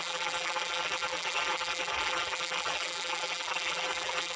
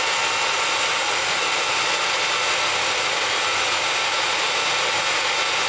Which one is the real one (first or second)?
second